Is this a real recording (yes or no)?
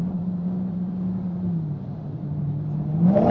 no